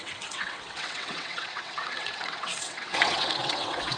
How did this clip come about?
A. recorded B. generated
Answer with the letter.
B